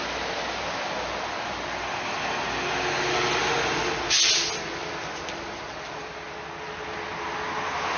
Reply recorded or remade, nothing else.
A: recorded